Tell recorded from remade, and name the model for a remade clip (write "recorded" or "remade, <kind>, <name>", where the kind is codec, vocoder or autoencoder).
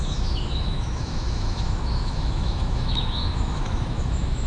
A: remade, autoencoder, DAC-VAE